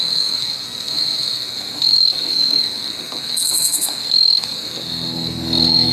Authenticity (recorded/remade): remade